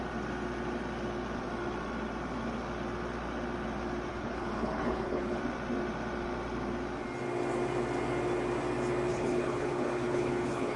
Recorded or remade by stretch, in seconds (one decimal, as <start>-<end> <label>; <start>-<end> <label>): 0.0-4.1 recorded; 4.1-5.4 remade; 5.4-9.1 recorded; 9.1-10.8 remade